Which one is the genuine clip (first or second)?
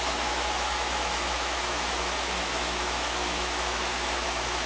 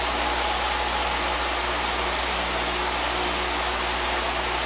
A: second